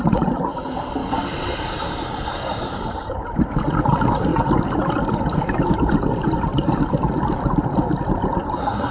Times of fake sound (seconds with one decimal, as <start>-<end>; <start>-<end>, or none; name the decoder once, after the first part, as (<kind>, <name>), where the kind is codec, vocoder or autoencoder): 0.0-4.3 (vocoder, BigVGAN v2)